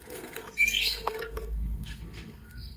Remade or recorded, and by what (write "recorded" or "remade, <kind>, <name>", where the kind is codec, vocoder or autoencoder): remade, codec, SNAC